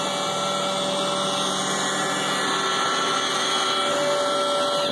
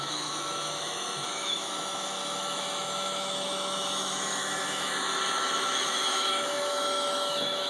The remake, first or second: second